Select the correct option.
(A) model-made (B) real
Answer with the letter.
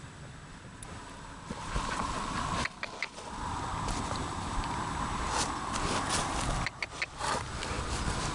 A